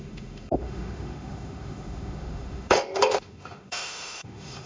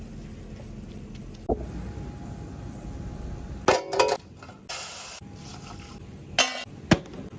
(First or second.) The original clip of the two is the second